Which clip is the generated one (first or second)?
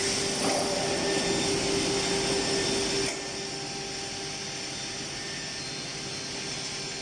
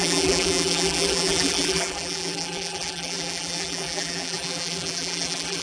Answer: second